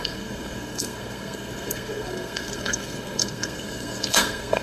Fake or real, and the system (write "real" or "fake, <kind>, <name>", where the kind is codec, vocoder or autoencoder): fake, codec, SNAC